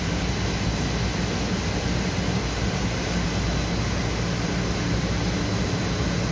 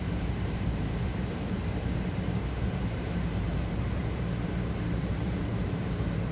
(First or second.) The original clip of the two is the first